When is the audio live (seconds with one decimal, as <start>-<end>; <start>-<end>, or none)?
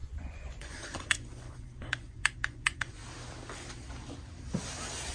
3.0-5.1